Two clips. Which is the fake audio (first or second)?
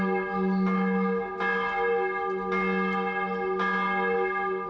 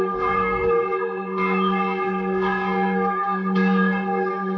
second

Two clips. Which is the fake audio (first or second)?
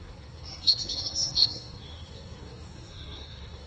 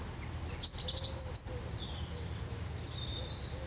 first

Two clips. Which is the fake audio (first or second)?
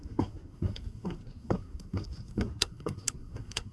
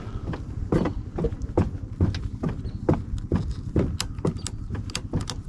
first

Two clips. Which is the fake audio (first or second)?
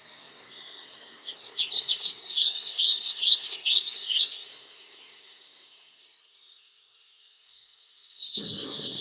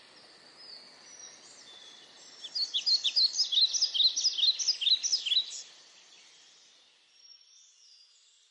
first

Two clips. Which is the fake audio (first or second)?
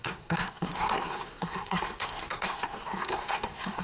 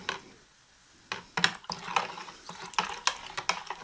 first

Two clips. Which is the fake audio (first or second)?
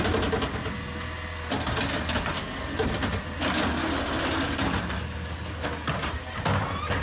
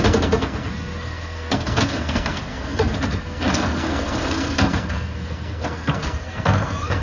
second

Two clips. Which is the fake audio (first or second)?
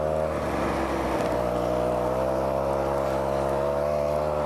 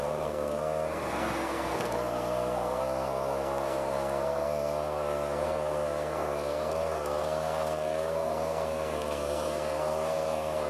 second